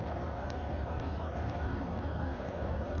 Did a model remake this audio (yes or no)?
yes